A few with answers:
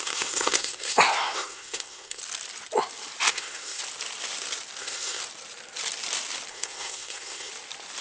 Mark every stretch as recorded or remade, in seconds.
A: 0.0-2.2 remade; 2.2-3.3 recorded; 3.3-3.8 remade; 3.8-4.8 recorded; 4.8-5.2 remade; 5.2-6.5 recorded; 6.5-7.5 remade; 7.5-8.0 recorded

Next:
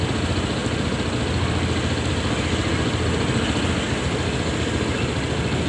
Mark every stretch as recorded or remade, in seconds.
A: 0.0-5.7 recorded